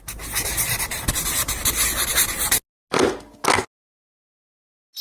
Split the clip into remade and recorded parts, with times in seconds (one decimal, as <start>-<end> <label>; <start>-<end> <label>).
0.0-5.0 recorded